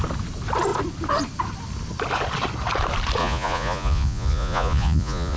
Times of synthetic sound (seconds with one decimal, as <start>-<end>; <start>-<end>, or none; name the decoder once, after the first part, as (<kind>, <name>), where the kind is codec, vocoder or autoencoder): 3.2-5.4 (vocoder, Vocos)